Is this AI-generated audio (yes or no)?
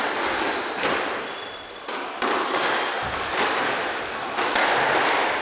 no